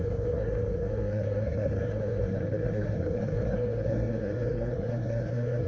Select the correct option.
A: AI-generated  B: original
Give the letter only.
A